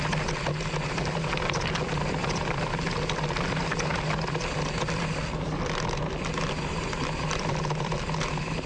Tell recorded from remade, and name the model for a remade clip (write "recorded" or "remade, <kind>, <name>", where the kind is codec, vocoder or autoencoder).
recorded